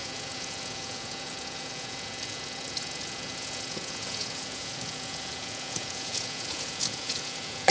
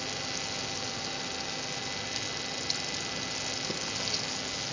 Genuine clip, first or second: second